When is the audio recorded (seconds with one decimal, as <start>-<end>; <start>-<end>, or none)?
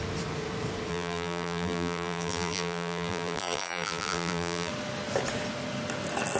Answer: 0.0-0.9; 4.7-6.4